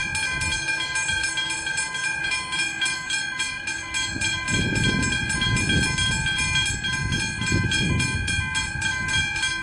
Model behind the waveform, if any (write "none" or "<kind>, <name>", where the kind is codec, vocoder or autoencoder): none